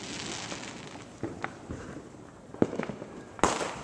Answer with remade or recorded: recorded